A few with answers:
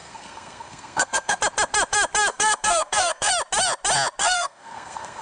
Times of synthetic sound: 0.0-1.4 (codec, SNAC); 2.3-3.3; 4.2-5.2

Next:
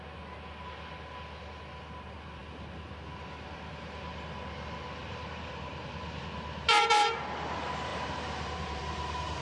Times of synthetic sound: 5.0-6.0 (vocoder, BigVGAN v2); 7.9-8.8

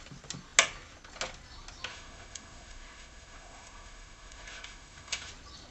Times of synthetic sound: 1.9-5.3 (autoencoder, DAC-VAE)

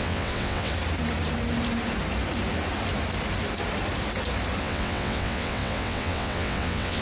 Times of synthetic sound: 0.0-0.7 (vocoder, WaveNeXt); 4.6-7.0

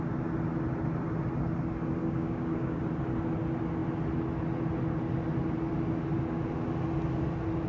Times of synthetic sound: 2.0-2.8 (codec, DAC)